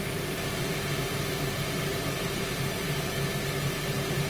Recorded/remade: recorded